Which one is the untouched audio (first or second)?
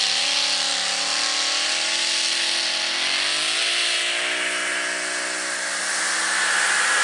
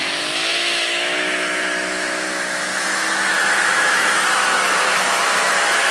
first